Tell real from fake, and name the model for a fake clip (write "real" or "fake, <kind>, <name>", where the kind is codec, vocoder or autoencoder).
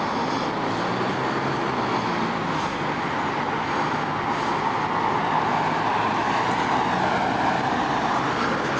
real